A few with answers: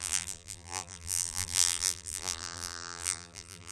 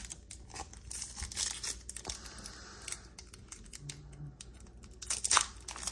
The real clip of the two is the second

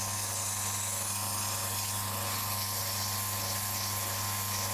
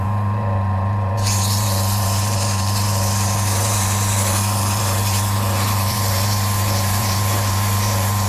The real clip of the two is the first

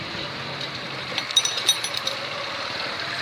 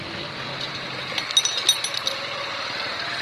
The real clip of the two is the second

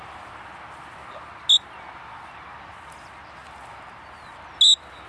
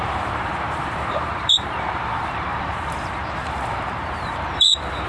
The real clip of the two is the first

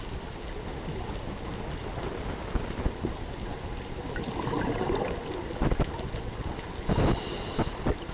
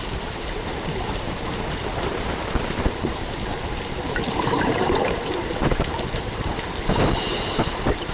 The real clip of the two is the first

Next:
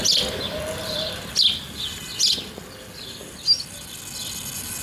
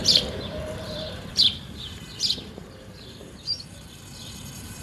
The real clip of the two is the first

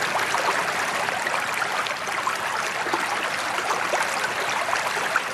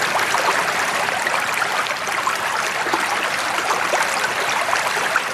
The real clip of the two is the first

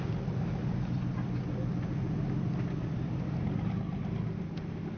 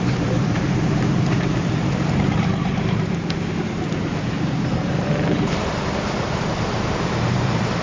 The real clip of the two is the first